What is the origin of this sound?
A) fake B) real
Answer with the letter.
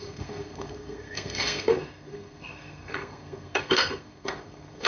A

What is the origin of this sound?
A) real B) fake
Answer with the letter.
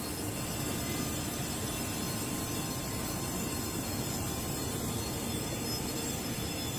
A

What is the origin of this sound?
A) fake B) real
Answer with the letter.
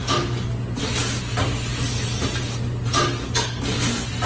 B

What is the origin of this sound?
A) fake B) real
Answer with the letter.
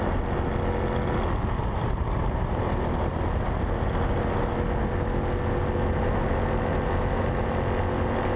B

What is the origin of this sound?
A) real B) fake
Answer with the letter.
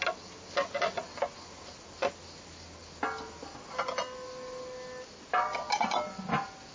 A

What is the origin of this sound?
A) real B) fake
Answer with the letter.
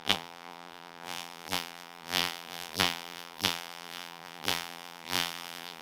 B